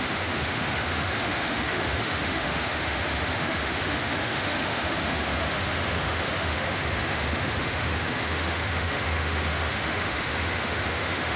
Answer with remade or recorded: remade